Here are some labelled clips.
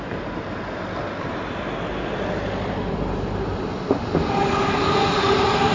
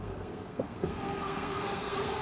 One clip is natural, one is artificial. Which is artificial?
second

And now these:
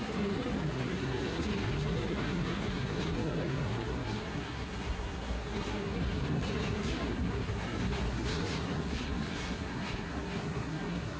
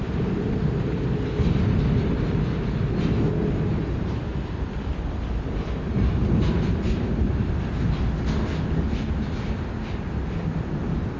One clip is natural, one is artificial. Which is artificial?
first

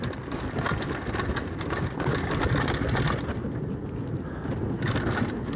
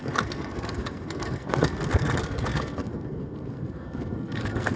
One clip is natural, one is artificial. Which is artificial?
second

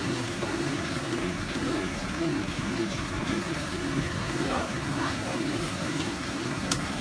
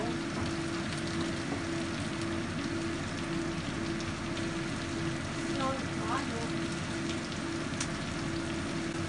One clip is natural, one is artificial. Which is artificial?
first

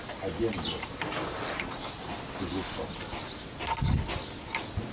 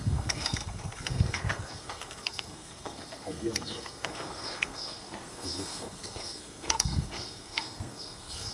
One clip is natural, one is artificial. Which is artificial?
second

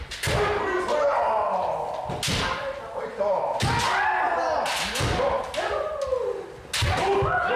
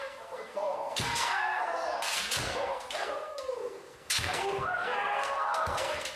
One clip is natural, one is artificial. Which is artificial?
second